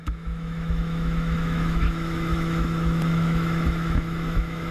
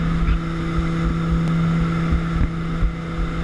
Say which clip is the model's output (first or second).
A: first